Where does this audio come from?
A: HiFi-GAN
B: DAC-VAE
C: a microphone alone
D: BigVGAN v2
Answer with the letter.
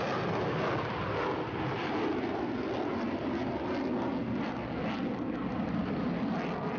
C